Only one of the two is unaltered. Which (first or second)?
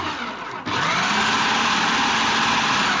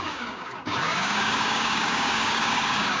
first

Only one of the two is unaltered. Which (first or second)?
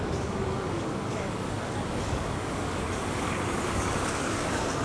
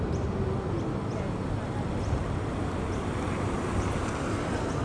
second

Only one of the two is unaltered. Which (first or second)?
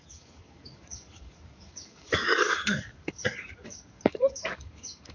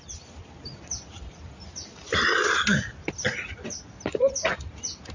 second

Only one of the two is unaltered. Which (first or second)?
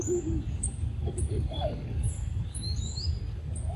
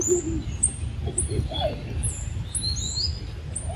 second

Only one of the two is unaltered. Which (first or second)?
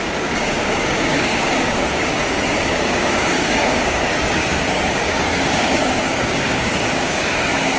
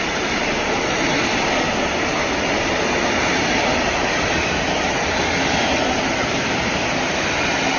second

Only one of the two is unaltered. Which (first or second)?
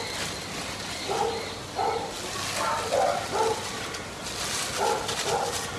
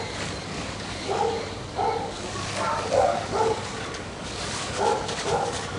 first